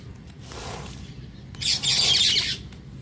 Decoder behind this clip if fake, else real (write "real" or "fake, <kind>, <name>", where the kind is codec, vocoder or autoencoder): real